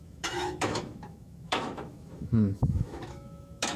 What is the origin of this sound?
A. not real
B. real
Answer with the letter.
A